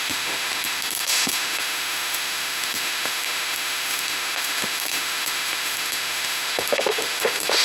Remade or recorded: remade